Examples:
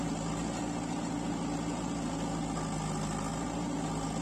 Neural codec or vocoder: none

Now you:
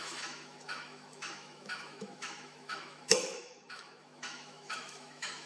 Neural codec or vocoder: autoencoder, DAC-VAE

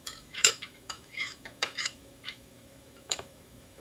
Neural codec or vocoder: autoencoder, DAC-VAE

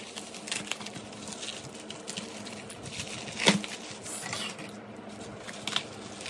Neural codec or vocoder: none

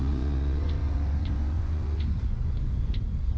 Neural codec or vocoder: vocoder, Vocos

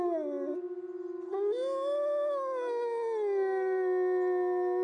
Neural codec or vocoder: none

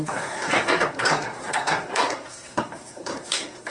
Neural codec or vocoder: codec, SNAC